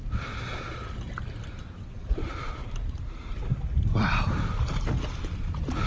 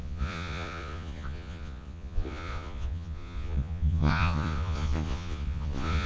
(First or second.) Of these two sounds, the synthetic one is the second